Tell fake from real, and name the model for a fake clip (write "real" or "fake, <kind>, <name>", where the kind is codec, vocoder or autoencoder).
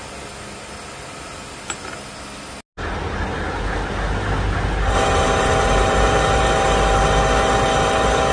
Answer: real